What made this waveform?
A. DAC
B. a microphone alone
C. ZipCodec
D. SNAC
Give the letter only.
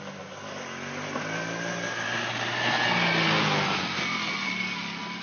B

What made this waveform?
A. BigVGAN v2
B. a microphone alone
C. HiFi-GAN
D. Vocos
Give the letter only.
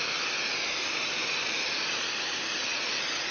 B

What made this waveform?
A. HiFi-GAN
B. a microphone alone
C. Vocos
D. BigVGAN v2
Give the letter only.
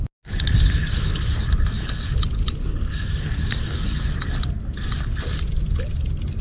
B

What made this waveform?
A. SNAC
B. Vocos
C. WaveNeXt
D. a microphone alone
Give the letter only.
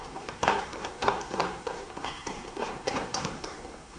A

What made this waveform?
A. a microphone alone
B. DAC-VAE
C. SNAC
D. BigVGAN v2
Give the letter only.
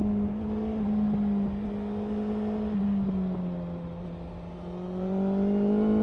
A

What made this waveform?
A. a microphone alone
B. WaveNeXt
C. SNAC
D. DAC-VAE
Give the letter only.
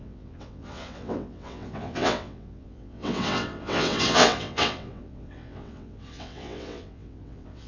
B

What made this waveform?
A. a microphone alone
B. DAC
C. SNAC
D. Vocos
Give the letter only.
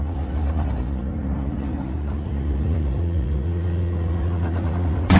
D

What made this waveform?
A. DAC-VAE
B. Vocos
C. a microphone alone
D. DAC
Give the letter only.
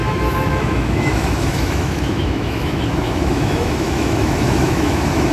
A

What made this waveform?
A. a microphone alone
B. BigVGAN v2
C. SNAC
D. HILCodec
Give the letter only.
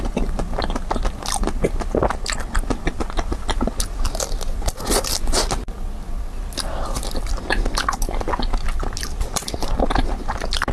A